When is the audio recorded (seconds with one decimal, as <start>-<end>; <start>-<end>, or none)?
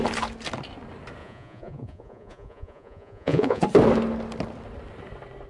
0.0-1.2; 3.6-5.5